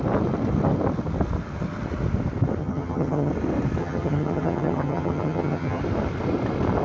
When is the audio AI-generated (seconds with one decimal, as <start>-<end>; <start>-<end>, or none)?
2.6-3.3; 3.8-5.8